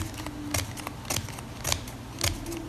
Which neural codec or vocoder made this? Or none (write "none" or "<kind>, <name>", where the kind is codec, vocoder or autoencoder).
none